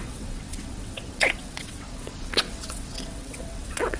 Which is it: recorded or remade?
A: remade